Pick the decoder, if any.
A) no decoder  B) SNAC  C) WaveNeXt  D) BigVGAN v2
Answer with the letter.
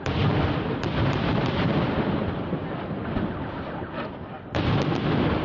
A